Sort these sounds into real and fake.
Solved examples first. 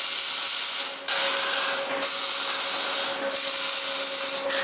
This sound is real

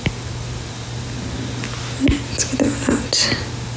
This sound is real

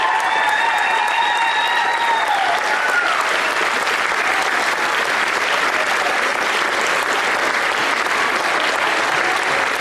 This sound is real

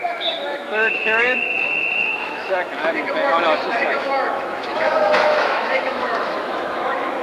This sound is fake